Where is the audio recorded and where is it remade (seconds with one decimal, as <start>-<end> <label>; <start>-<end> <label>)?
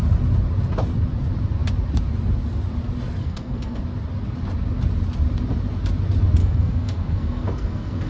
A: 0.0-3.2 recorded; 3.2-3.8 remade; 3.8-6.4 recorded; 6.4-8.1 remade